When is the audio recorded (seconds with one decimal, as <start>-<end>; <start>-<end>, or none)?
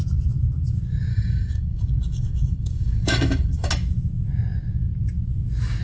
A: 0.0-1.1; 3.7-5.8